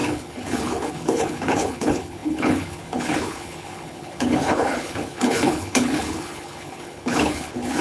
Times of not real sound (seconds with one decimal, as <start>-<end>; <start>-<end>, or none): 0.0-7.8

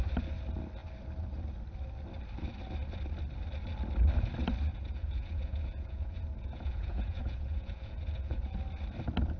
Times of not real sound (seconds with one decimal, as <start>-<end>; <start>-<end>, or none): 4.7-8.6

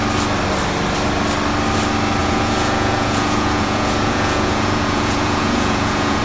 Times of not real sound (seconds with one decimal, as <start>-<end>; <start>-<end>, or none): 2.2-6.2

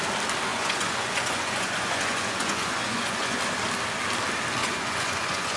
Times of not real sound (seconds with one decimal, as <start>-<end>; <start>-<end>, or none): 0.5-3.4; 4.6-5.6

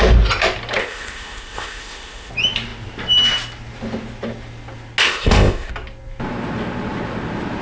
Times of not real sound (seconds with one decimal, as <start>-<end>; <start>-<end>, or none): 0.8-2.3; 5.0-5.7

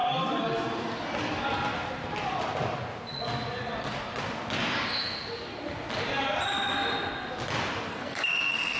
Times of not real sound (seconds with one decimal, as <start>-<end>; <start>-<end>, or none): 7.9-8.8